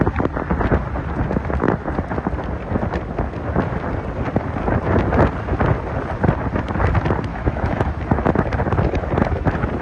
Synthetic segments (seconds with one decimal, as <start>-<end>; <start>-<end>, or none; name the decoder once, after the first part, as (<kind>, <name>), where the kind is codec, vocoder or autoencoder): 7.3-8.0 (autoencoder, DAC-VAE)